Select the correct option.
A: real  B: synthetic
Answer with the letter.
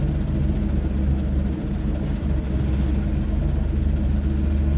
A